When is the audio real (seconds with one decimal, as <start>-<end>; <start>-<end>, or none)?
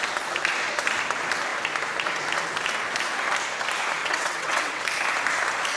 0.0-4.0; 4.8-5.8